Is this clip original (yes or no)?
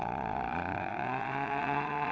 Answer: no